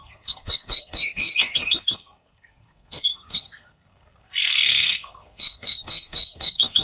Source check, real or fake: fake